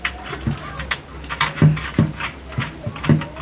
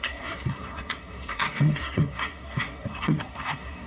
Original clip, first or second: first